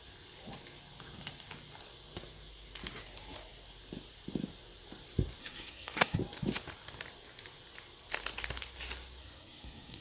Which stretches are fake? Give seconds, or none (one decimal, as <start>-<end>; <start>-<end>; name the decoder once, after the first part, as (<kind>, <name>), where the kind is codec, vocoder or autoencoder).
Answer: 5.4-6.2 (codec, SNAC); 9.2-10.0